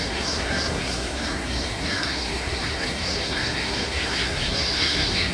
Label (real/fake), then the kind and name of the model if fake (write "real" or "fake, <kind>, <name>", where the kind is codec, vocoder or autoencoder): fake, codec, SNAC